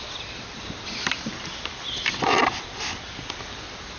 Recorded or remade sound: recorded